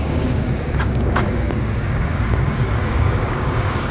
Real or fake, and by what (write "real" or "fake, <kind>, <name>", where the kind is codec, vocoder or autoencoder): fake, codec, DAC